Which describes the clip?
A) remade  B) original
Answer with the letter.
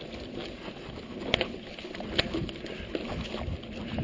B